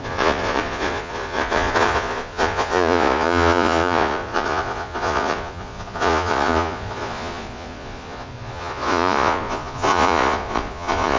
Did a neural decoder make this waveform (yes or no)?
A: yes